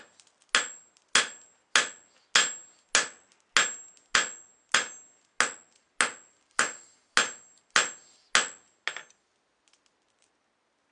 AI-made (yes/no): no